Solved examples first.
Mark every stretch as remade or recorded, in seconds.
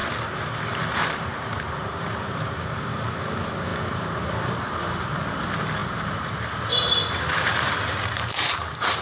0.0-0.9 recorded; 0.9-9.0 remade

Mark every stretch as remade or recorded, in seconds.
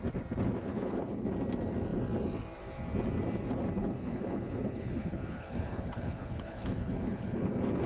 0.0-0.7 recorded; 0.7-1.3 remade; 1.3-3.8 recorded; 3.8-7.5 remade; 7.5-7.9 recorded